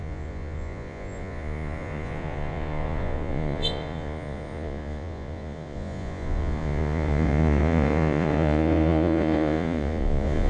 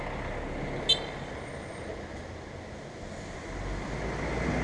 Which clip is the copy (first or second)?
first